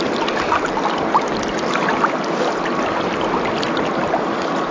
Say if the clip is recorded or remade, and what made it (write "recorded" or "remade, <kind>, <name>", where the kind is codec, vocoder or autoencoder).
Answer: recorded